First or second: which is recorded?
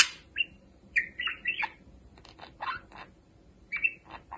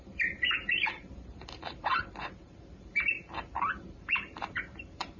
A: first